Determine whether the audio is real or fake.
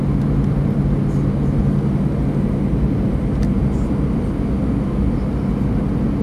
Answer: real